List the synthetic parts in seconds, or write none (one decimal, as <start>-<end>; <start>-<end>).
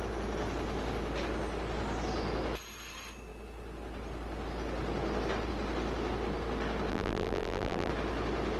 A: 6.9-7.9